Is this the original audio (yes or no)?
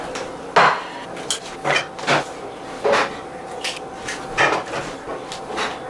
yes